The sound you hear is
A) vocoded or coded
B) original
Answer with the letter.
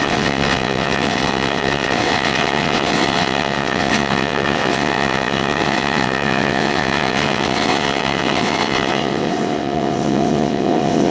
A